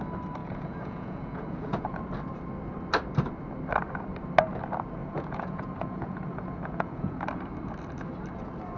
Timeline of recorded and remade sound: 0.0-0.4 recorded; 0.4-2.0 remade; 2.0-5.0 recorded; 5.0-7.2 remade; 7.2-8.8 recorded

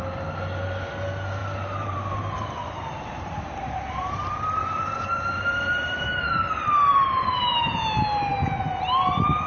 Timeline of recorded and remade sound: 0.0-1.4 recorded; 1.4-5.6 remade; 5.6-9.5 recorded

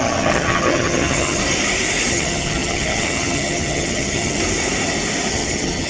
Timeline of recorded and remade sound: 0.0-1.4 remade; 1.4-2.1 recorded; 2.1-4.4 remade; 4.4-5.3 recorded; 5.3-5.9 remade

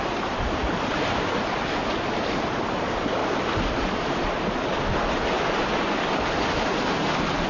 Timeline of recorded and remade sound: 0.0-7.5 recorded

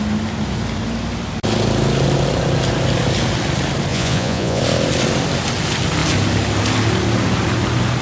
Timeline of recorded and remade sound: 0.0-3.9 recorded; 3.9-4.6 remade; 4.6-8.0 recorded

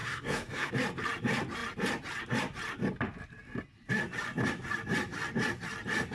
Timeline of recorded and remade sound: 0.0-0.7 remade; 0.7-6.1 recorded